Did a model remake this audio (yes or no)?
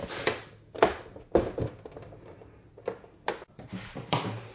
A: no